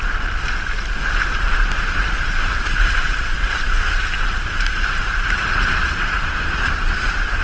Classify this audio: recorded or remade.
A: recorded